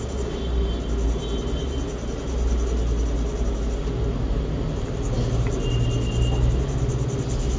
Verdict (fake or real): real